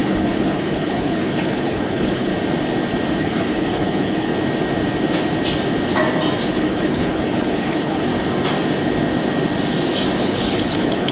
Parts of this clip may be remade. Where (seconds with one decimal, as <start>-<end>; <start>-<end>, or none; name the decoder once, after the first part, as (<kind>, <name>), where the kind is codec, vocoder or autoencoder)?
0.0-2.3 (codec, HILCodec); 3.2-4.3; 6.5-8.1; 10.2-11.1